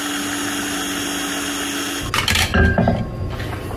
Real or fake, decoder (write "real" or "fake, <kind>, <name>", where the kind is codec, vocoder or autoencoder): real